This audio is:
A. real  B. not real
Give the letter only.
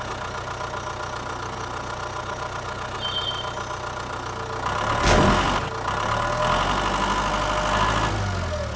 A